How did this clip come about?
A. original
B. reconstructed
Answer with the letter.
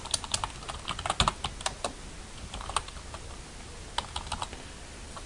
A